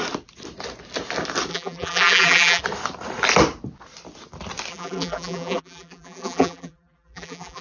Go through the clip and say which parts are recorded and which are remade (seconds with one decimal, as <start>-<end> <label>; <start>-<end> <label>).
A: 0.0-1.5 recorded; 1.5-2.6 remade; 2.6-4.7 recorded; 4.7-7.6 remade